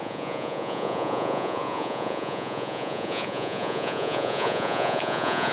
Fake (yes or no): yes